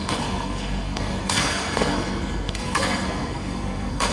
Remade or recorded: remade